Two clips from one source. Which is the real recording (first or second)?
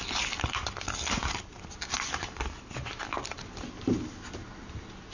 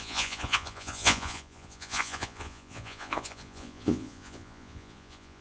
first